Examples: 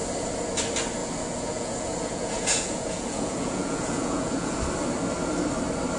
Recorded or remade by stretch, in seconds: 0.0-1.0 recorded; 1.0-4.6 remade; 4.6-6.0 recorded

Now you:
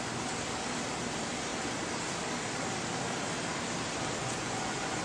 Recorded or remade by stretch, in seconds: 0.0-4.2 recorded; 4.2-5.0 remade

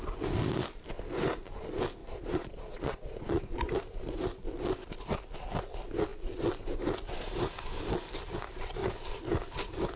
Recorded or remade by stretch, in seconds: 0.0-2.0 recorded; 2.0-3.4 remade; 3.4-10.0 recorded

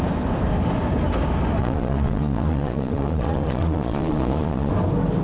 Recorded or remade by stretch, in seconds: 0.0-1.6 recorded; 1.6-4.7 remade; 4.7-5.2 recorded

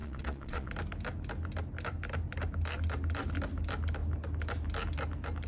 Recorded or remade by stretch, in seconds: 0.0-0.7 remade; 0.7-5.5 recorded